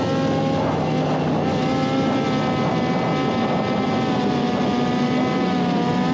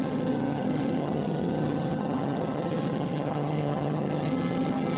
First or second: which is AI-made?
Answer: second